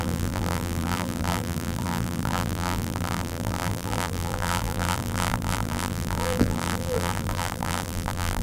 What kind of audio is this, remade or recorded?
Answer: remade